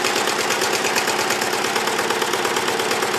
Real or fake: real